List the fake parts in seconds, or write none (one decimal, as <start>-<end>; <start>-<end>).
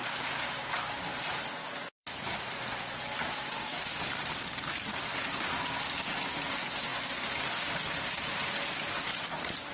0.0-6.9; 7.4-9.1